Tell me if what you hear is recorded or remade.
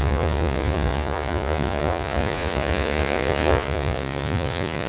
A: remade